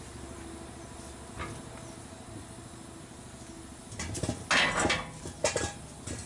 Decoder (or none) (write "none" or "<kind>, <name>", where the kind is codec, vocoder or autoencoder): none